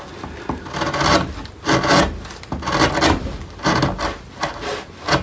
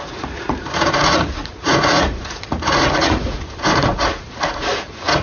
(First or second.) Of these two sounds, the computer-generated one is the second